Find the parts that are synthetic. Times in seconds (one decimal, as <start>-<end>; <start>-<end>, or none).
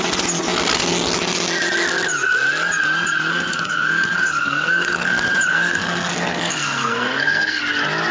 3.3-5.1; 5.5-7.6